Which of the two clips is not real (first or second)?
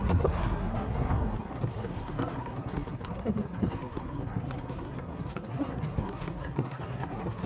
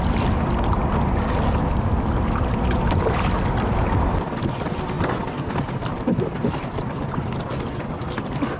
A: first